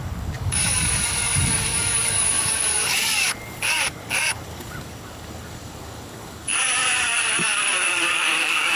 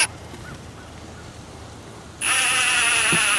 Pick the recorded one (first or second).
second